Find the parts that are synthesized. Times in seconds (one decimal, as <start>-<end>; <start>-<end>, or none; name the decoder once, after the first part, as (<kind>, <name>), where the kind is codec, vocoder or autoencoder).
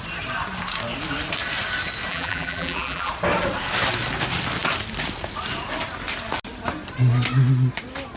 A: 2.1-3.1 (vocoder, BigVGAN v2)